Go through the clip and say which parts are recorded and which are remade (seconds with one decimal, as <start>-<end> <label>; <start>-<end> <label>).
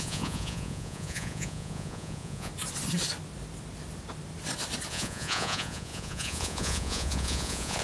0.0-2.5 remade; 2.5-4.9 recorded; 4.9-7.8 remade